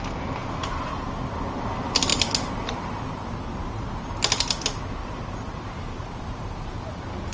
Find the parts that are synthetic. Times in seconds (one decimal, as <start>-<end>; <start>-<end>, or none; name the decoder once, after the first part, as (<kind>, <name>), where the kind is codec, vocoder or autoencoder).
0.4-0.9 (vocoder, BigVGAN v2); 2.1-3.1; 5.0-6.7